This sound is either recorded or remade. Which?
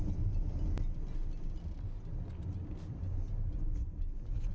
recorded